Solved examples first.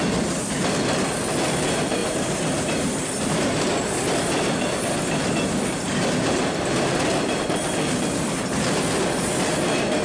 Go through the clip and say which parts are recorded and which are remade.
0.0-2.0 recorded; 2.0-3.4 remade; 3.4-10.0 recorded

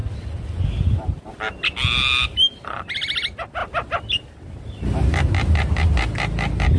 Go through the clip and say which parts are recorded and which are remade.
0.0-1.3 remade; 1.3-3.6 recorded; 3.6-4.1 remade; 4.1-6.8 recorded

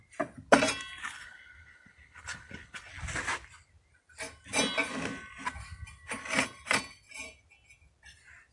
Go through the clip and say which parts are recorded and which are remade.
0.0-1.0 recorded; 1.0-2.9 remade; 2.9-8.5 recorded

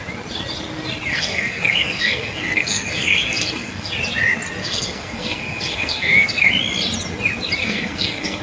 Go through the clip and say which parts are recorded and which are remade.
0.0-1.1 recorded; 1.1-3.9 remade; 3.9-4.6 recorded; 4.6-6.5 remade; 6.5-7.6 recorded; 7.6-8.4 remade

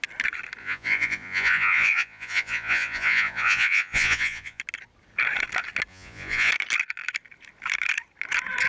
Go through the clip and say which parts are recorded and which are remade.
0.0-0.6 recorded; 0.6-4.6 remade; 4.6-5.9 recorded; 5.9-6.5 remade; 6.5-8.7 recorded

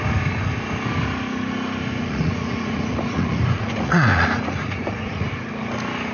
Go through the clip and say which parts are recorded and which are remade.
0.0-2.0 recorded; 2.0-5.3 remade; 5.3-6.1 recorded